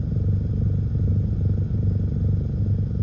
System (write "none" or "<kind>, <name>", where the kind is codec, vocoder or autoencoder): none